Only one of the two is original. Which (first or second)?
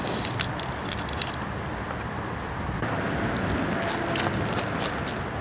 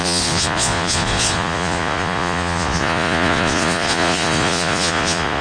first